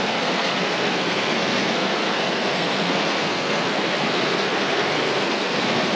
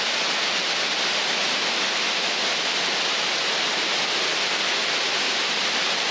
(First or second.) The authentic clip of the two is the second